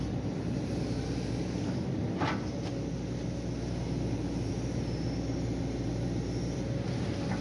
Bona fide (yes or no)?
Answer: yes